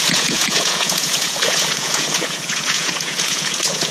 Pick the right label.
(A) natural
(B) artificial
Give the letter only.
B